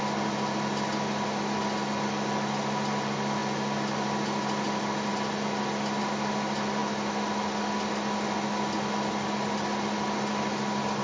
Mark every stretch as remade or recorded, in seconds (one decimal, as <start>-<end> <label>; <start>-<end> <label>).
0.0-11.0 recorded